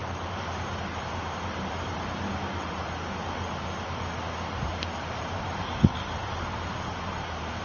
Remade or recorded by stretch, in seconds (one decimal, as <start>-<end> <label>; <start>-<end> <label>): 0.0-3.0 remade; 3.0-4.7 recorded; 4.7-5.6 remade; 5.6-6.2 recorded; 6.2-7.6 remade